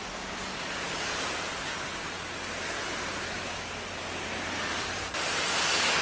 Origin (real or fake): real